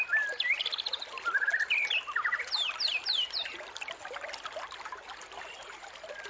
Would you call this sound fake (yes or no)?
no